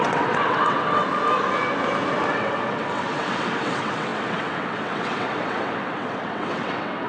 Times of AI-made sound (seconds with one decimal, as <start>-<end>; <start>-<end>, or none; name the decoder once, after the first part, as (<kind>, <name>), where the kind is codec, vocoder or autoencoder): 0.0-1.0 (vocoder, WaveNeXt); 2.3-7.1